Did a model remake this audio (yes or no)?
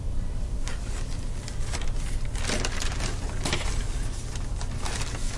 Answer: no